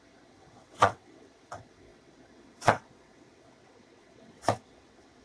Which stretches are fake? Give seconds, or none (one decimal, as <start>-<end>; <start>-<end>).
0.0-5.2